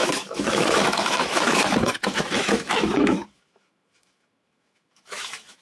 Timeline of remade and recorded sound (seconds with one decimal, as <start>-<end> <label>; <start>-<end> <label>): 0.0-5.6 remade